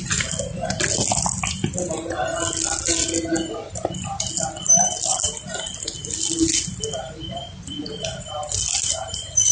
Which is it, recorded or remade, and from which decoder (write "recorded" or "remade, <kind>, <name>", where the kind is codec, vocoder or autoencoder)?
recorded